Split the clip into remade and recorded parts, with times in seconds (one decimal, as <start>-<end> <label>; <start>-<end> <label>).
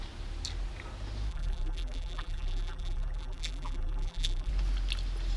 0.0-1.3 recorded; 1.3-4.5 remade; 4.5-5.4 recorded